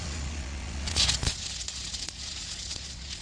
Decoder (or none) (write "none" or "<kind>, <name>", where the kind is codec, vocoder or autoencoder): vocoder, Vocos